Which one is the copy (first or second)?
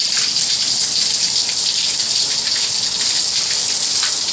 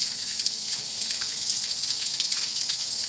second